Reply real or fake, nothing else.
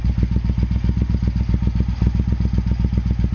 real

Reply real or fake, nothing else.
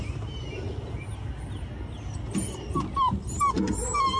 real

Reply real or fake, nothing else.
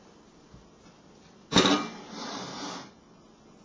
real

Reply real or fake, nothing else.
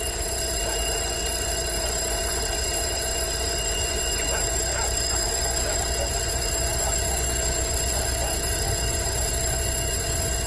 fake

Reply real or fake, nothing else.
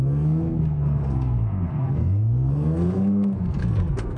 fake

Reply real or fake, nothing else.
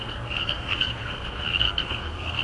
fake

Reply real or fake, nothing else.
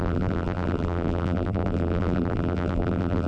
fake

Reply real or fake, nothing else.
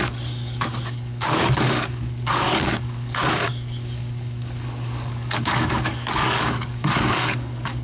fake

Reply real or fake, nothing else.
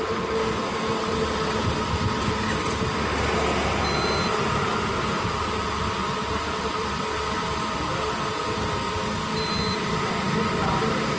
real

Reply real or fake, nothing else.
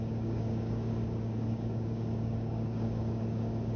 fake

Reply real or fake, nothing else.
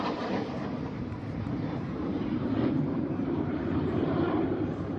fake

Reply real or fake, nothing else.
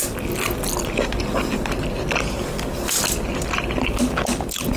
real